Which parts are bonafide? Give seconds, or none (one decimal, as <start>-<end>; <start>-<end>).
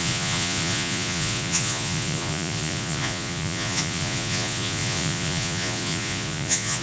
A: none